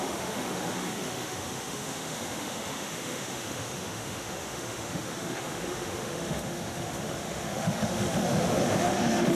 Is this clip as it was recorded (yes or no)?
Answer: no